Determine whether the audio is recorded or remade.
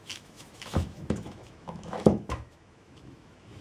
remade